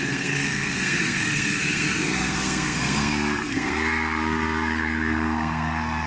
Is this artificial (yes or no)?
yes